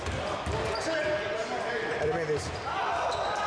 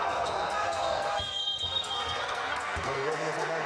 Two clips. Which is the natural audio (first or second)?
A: first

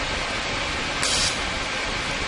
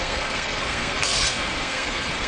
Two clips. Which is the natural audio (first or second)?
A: first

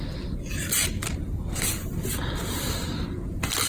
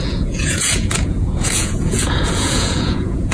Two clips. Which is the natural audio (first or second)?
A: first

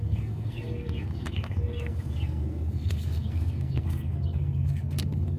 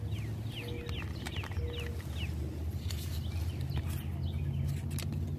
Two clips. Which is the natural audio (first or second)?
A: second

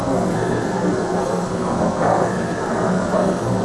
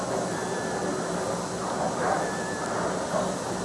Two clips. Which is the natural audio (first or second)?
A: second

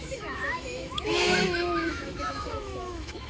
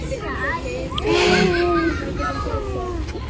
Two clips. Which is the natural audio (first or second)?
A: second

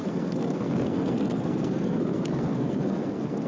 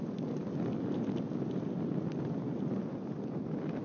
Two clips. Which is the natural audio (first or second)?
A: second